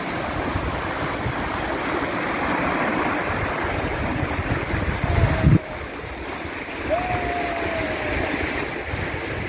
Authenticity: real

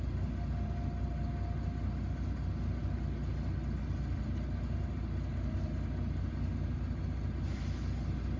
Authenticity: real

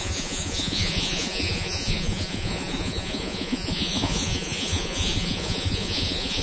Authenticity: fake